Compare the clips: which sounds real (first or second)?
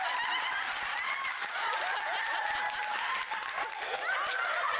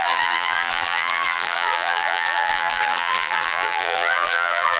first